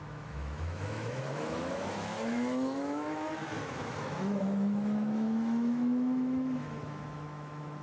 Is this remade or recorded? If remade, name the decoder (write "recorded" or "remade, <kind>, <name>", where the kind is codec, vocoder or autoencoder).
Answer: remade, autoencoder, DAC-VAE